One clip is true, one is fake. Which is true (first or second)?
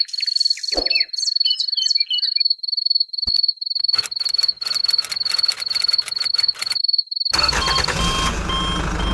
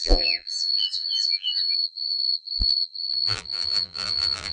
first